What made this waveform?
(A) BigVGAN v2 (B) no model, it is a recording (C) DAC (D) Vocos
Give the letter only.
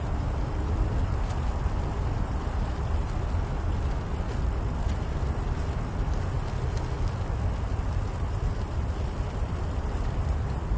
B